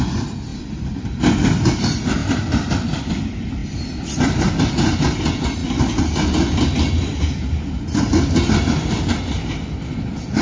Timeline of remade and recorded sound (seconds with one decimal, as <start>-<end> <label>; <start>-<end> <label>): 0.0-0.5 recorded; 0.5-1.2 remade; 1.2-2.2 recorded; 2.2-3.1 remade; 3.1-3.6 recorded; 3.6-4.5 remade; 4.5-10.4 recorded